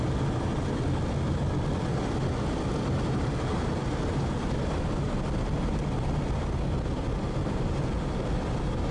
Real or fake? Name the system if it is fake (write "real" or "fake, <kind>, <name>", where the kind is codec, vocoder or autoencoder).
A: real